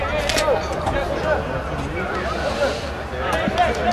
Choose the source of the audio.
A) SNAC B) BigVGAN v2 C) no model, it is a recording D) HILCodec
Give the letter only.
C